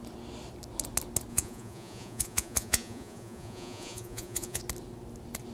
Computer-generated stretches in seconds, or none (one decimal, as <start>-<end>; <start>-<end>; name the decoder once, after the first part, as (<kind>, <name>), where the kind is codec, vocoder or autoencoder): 1.3-4.6 (vocoder, Vocos)